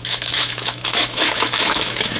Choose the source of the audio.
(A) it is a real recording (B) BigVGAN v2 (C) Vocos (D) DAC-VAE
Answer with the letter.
D